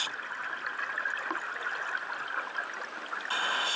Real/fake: real